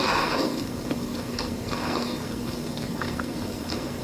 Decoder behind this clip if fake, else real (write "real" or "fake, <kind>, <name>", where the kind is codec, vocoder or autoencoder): fake, codec, SNAC